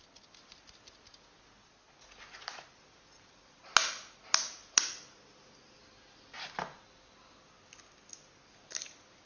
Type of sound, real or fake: real